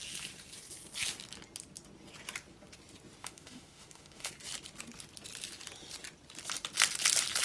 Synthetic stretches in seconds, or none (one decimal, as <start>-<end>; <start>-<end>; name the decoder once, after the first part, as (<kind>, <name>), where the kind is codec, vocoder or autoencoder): 3.2-4.3 (autoencoder, DAC-VAE)